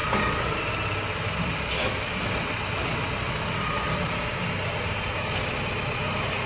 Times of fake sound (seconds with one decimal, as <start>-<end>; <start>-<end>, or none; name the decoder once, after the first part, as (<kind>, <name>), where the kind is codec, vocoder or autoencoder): 1.8-2.3 (autoencoder, DAC-VAE)